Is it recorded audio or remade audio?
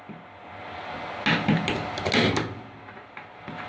recorded